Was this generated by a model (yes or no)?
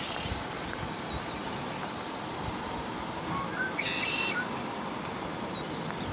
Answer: no